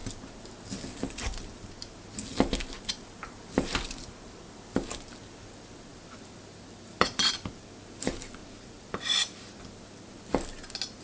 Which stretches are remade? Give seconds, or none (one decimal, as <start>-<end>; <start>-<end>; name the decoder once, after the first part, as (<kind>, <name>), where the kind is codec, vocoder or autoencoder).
5.9-7.3 (vocoder, BigVGAN v2); 8.4-9.6